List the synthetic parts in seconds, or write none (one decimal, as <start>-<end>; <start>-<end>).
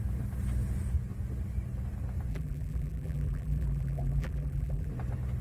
2.3-4.9